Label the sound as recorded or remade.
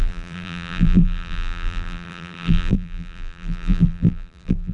remade